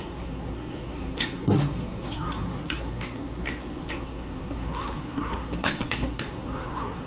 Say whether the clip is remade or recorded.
remade